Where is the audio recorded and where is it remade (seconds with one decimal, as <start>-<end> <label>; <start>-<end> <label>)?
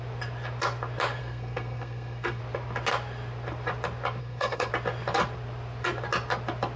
0.0-1.2 recorded; 1.2-2.4 remade; 2.4-4.2 recorded; 4.2-4.7 remade; 4.7-6.8 recorded